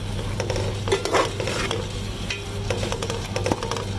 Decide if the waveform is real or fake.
real